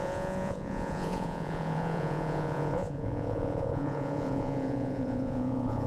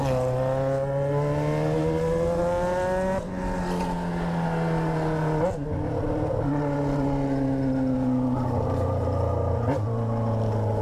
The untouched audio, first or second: second